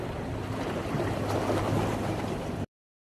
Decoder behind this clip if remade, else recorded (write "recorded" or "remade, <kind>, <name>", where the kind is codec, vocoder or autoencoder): remade, vocoder, BigVGAN v2